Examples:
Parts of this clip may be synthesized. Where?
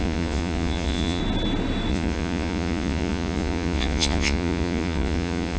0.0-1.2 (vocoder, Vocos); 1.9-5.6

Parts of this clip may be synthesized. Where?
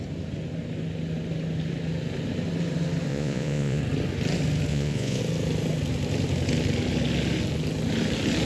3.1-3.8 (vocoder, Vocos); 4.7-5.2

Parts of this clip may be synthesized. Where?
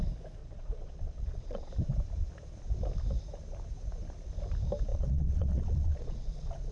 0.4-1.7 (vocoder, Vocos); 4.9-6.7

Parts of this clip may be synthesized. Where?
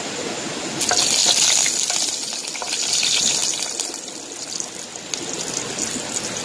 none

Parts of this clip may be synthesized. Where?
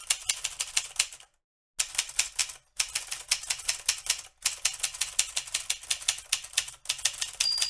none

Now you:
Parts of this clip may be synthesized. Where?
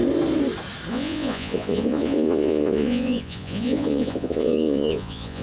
0.9-5.4 (vocoder, Vocos)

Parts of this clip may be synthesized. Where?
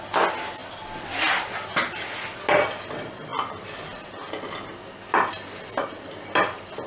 none